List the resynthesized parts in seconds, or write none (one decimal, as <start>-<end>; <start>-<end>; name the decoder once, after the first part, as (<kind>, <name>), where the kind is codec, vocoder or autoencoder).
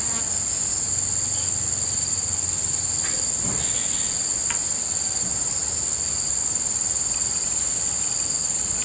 none